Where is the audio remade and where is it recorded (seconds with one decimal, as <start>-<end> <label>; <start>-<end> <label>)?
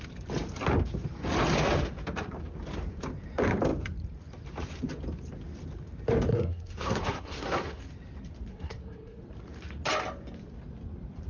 0.0-6.3 recorded; 6.3-7.8 remade; 7.8-8.5 recorded; 8.5-9.2 remade; 9.2-11.3 recorded